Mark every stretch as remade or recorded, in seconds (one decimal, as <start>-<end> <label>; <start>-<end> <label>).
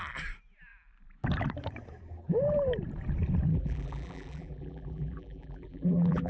0.0-3.5 recorded; 3.5-6.3 remade